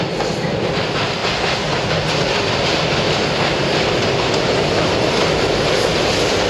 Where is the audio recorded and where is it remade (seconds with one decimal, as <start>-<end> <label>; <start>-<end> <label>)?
0.0-6.5 recorded